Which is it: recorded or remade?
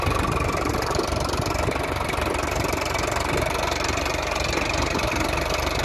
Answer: recorded